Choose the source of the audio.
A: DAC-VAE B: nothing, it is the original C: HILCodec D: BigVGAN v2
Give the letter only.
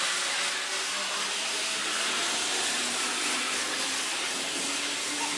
B